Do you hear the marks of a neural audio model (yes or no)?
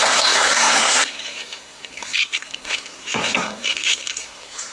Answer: yes